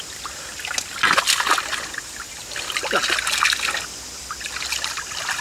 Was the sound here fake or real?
real